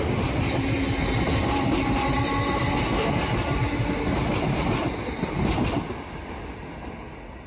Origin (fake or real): real